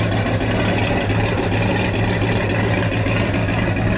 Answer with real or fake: real